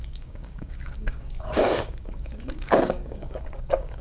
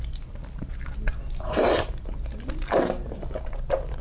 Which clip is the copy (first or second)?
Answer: first